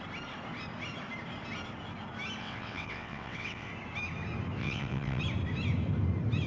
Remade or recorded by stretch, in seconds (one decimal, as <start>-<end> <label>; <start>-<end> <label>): 0.0-2.4 recorded; 2.4-3.7 remade; 3.7-4.6 recorded; 4.6-5.2 remade; 5.2-6.5 recorded

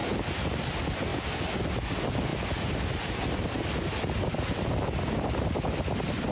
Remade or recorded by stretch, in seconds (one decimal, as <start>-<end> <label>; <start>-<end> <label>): 0.0-6.3 recorded

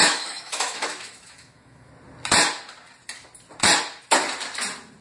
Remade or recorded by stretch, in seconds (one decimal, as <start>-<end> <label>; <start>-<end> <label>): 0.0-1.9 remade; 1.9-5.0 recorded

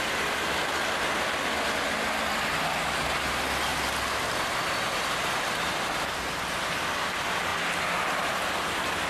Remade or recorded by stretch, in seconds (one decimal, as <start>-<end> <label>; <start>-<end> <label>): 0.0-9.1 recorded

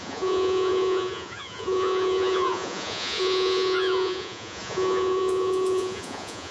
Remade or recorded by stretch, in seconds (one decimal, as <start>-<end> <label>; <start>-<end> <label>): 0.0-6.5 remade

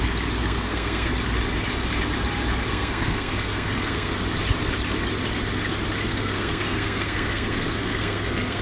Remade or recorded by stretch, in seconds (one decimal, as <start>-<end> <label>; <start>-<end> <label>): 0.0-0.4 recorded; 0.4-1.1 remade; 1.1-2.7 recorded; 2.7-4.2 remade; 4.2-6.1 recorded; 6.1-8.6 remade

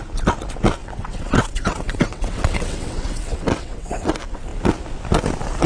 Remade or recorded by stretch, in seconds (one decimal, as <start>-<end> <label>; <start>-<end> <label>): 0.0-0.8 recorded; 0.8-4.1 remade; 4.1-5.7 recorded

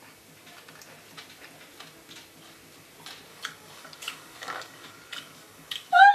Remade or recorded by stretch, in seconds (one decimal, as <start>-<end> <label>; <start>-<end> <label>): 0.0-3.3 recorded; 3.3-6.1 remade